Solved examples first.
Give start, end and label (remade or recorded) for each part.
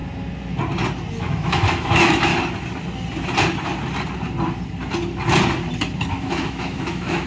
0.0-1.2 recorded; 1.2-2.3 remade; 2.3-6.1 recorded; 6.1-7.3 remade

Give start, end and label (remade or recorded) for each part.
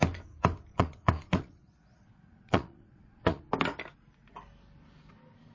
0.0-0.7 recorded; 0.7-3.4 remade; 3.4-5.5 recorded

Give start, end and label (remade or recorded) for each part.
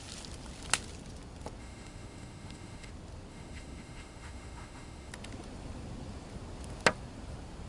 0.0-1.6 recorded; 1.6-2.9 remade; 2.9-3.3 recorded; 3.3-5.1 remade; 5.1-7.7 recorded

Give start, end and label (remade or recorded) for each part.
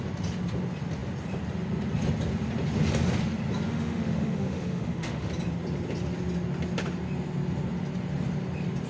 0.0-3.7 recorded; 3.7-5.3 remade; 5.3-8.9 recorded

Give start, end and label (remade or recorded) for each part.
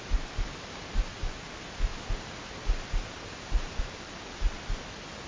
0.0-5.3 recorded